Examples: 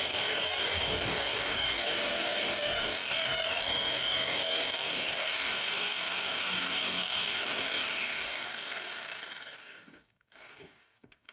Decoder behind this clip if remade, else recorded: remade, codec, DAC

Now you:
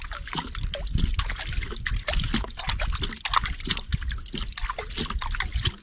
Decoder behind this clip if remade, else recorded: recorded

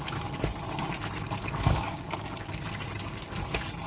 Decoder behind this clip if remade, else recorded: recorded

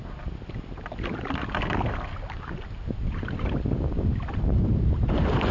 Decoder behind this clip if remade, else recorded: recorded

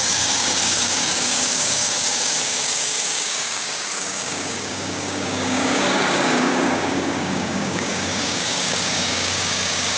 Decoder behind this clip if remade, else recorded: remade, codec, DAC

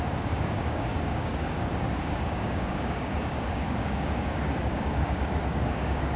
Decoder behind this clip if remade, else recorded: remade, codec, DAC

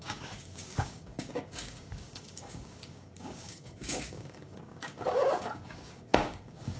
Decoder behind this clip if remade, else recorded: remade, codec, DAC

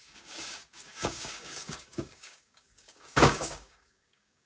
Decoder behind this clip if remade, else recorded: remade, codec, DAC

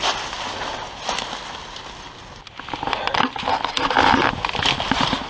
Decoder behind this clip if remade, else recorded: recorded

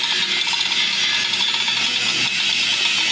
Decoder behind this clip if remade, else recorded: recorded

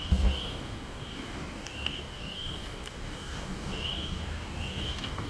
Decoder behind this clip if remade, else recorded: remade, codec, DAC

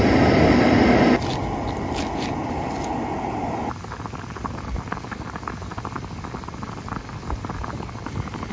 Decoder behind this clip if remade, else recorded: recorded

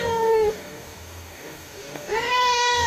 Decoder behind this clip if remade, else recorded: remade, codec, DAC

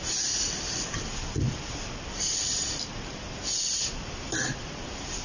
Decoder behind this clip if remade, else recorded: recorded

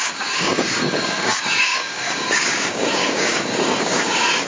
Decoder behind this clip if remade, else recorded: remade, codec, DAC